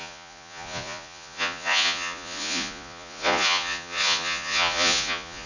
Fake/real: fake